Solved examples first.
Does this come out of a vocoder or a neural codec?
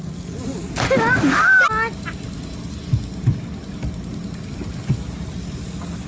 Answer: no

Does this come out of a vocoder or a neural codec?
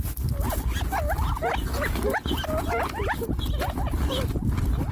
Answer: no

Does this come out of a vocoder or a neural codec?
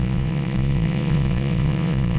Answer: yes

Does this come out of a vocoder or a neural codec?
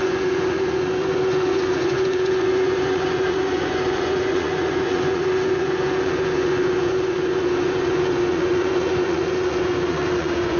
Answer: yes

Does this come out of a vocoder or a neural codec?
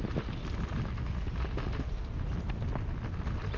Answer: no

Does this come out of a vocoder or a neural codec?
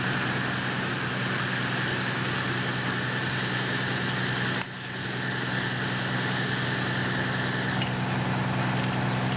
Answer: no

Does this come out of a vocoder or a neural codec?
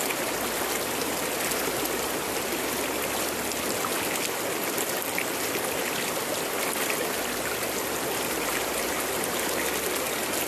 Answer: no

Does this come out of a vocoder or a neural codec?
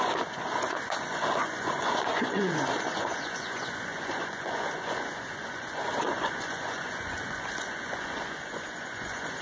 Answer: yes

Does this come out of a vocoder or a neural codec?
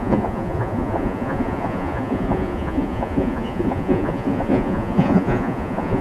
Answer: yes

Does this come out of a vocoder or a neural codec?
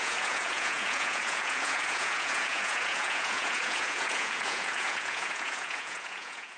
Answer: yes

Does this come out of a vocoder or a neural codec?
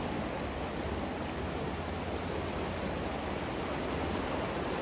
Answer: no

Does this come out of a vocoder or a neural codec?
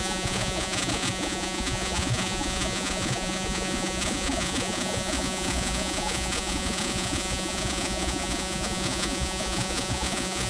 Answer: yes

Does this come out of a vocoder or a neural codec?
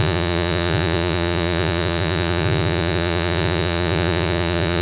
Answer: yes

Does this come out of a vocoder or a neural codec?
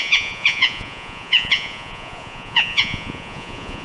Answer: yes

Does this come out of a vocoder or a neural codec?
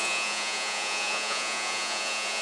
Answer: yes